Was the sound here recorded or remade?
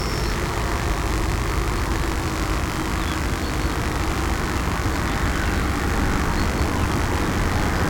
recorded